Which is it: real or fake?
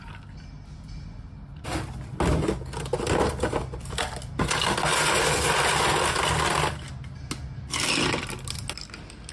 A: real